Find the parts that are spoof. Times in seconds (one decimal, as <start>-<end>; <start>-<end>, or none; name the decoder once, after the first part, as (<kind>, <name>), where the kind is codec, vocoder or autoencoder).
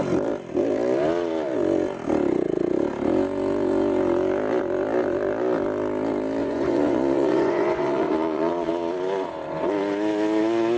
6.4-8.7 (vocoder, Vocos)